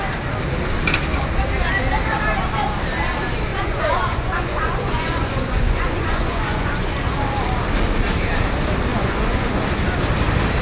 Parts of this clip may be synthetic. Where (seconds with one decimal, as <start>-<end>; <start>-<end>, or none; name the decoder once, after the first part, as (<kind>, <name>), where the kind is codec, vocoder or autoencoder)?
3.5-6.9 (vocoder, Vocos); 8.9-9.6